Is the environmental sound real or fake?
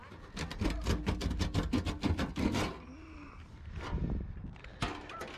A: real